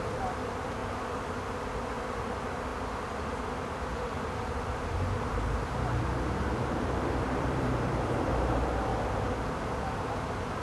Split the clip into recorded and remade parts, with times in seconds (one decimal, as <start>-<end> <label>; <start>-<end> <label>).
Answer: 0.0-0.8 remade; 0.8-2.2 recorded; 2.2-2.7 remade; 2.7-3.5 recorded; 3.5-8.9 remade; 8.9-10.0 recorded; 10.0-10.6 remade